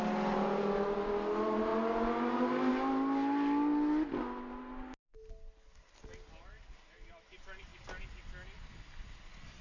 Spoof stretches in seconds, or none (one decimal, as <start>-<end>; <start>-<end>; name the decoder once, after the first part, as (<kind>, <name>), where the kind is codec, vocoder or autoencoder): none